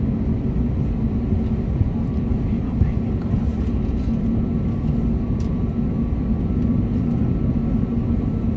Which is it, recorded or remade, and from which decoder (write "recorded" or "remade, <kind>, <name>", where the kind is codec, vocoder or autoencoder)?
recorded